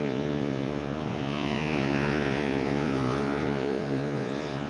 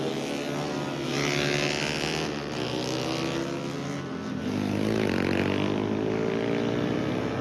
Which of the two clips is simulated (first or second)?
first